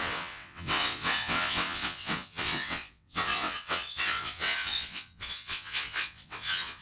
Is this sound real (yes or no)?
no